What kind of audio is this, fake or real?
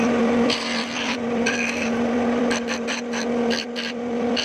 fake